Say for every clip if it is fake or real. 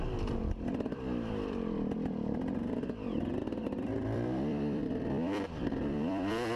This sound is fake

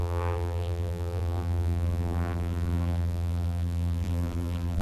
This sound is fake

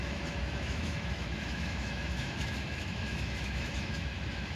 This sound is fake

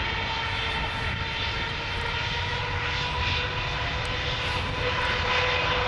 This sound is real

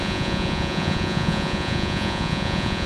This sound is fake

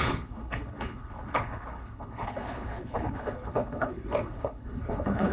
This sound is fake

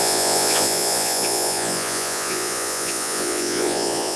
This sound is fake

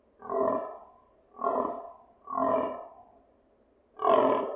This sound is real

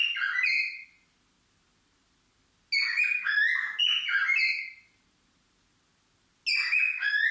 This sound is real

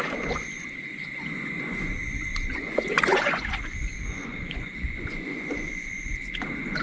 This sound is fake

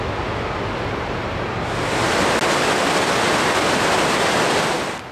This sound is real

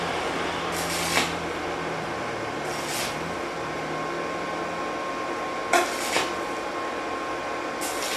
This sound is real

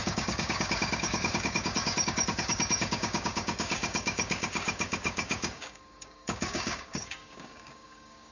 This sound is fake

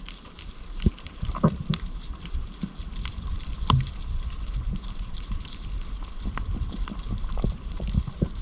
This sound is fake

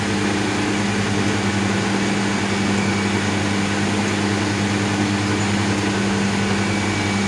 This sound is real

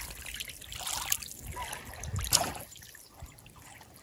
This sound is real